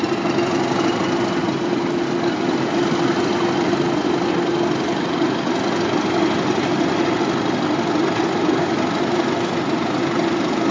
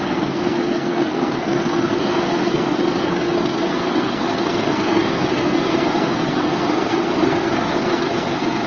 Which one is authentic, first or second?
first